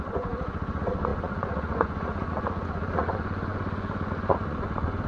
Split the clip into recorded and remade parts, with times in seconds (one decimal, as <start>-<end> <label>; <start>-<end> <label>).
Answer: 0.0-5.1 remade